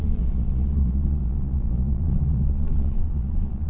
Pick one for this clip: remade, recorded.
remade